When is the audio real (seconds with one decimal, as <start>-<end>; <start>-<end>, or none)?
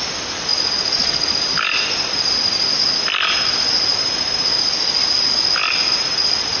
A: 0.0-6.6